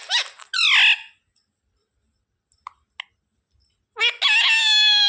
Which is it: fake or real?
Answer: real